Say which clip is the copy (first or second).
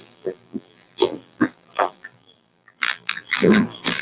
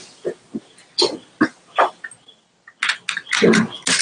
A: first